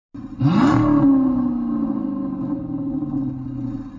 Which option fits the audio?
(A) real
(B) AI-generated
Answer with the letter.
A